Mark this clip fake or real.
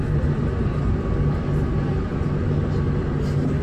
real